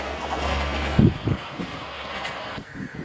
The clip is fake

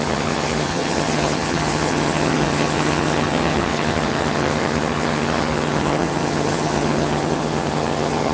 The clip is fake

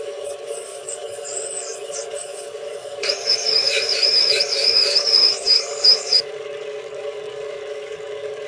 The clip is fake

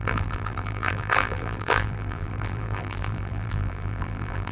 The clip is fake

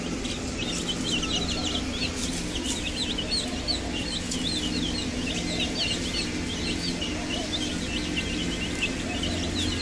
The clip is real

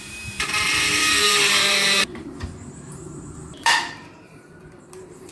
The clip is fake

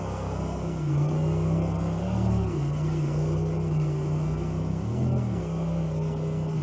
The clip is fake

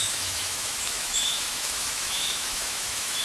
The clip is fake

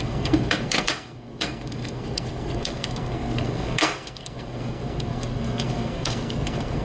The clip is fake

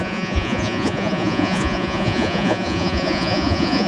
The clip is fake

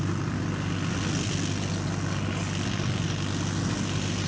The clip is real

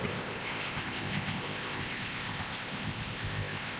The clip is fake